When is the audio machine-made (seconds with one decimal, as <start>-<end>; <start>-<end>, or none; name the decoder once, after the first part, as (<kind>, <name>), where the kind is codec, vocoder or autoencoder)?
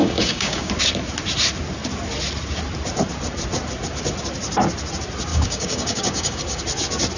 0.0-0.7 (codec, DAC); 5.3-6.6